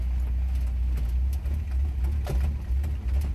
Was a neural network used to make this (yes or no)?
no